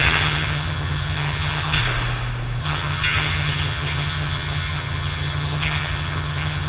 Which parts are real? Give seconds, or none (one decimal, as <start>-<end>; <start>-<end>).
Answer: 1.8-2.6